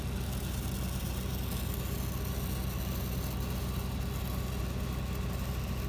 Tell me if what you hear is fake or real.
real